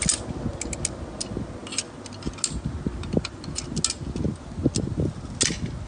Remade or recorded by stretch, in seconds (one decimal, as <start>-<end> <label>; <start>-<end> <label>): 0.0-5.9 recorded